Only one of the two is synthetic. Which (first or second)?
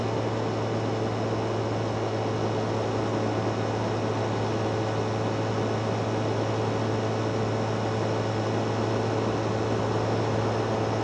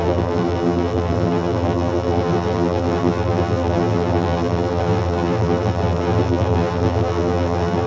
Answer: second